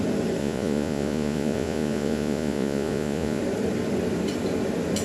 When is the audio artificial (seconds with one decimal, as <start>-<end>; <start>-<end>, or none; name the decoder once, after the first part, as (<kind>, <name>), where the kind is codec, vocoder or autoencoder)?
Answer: 0.4-3.4 (vocoder, Vocos)